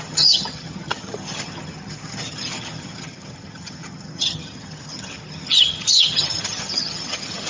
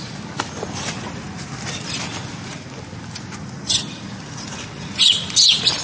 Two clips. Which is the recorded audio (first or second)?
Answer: second